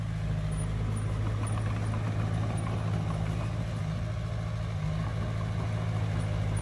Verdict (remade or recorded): recorded